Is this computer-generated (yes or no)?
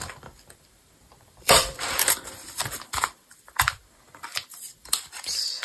yes